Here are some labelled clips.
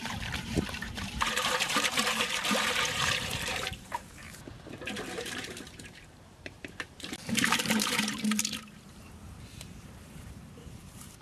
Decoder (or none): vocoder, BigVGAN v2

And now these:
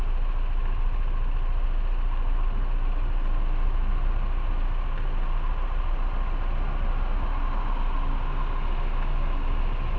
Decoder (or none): none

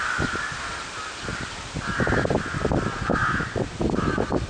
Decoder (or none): none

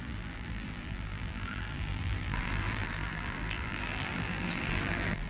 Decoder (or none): vocoder, BigVGAN v2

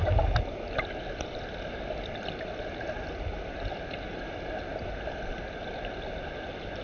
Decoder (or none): none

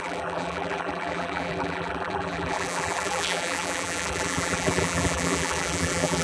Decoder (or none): vocoder, BigVGAN v2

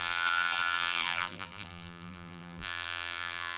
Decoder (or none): vocoder, BigVGAN v2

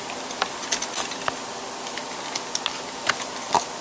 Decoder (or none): none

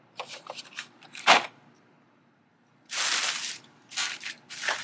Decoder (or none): vocoder, BigVGAN v2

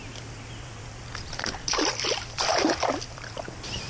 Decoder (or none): none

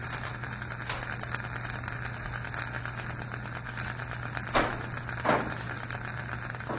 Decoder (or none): none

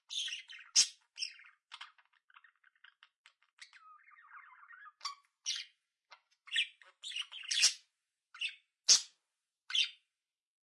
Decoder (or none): none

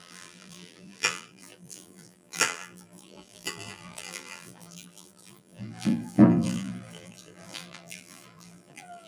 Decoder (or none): vocoder, BigVGAN v2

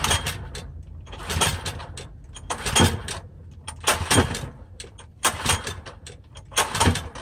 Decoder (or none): vocoder, BigVGAN v2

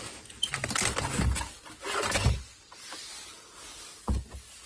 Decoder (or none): none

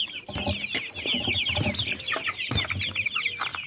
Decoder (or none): none